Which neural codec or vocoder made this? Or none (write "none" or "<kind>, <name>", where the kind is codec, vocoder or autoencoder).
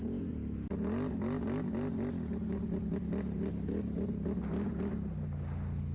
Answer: none